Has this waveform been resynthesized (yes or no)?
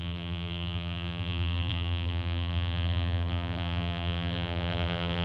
yes